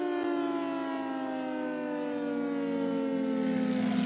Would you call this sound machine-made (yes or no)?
no